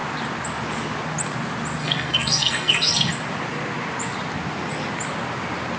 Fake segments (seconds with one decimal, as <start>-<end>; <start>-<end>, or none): 1.8-3.1

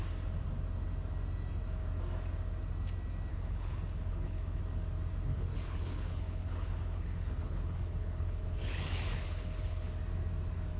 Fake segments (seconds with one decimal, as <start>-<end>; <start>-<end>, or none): 3.3-4.6; 5.3-9.9

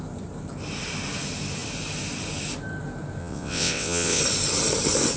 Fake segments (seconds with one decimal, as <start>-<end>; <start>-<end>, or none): 3.2-4.2

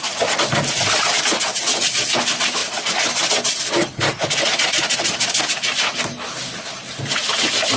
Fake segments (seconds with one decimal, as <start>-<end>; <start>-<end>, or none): none

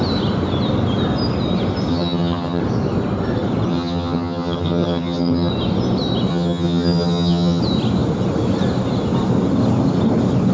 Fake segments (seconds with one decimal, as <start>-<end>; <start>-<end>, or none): 1.9-2.6; 3.7-5.5; 6.3-7.6

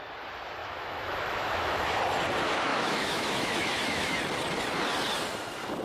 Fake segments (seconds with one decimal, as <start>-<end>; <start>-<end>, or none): 0.6-2.0; 2.7-4.2

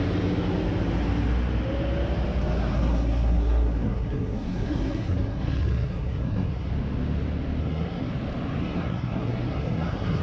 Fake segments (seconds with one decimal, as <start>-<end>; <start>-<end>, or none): 2.7-6.7; 7.6-8.1; 8.6-10.2

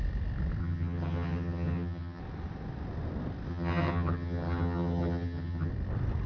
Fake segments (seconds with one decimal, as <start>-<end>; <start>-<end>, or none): 0.6-2.2; 3.5-5.7